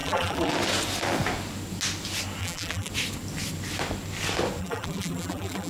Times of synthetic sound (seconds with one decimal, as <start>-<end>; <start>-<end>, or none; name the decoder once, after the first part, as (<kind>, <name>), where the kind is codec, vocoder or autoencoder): 0.0-0.5 (vocoder, BigVGAN v2); 2.4-2.9; 4.6-5.7